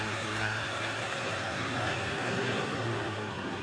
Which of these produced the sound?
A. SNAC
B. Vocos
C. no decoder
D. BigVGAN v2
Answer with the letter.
A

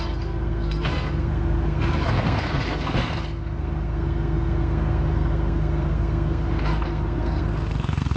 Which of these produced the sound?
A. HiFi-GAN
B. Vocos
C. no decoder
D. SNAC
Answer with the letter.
D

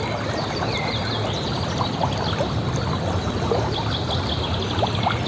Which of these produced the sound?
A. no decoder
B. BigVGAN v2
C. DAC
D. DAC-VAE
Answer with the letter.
A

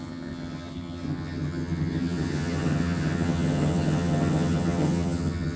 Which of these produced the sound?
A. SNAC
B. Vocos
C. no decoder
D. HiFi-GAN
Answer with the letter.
D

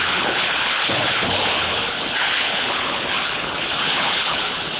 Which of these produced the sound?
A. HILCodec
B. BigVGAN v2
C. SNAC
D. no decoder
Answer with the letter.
A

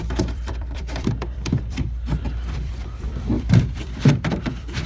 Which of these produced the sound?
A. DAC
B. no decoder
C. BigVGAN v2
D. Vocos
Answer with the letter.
C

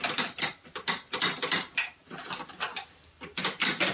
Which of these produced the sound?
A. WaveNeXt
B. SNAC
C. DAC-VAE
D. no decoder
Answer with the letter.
D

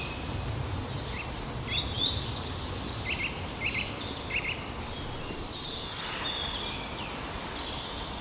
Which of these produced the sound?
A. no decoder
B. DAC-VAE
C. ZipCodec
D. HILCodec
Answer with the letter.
A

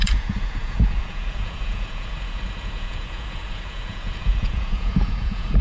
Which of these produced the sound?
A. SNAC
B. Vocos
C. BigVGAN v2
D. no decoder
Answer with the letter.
B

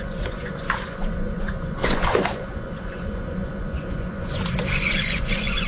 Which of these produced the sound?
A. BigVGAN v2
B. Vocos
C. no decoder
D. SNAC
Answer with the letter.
B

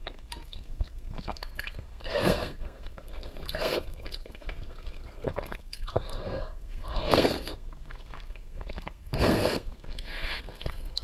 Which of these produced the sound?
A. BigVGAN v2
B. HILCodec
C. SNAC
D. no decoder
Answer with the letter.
C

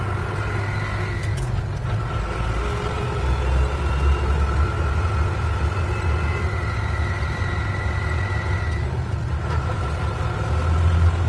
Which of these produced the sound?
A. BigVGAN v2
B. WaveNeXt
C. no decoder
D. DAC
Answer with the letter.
C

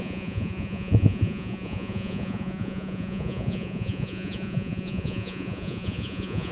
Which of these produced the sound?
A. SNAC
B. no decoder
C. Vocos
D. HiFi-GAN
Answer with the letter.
C